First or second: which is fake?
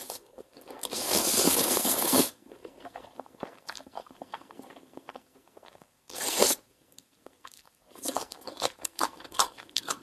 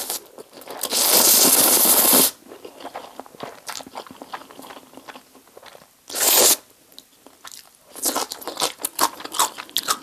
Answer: first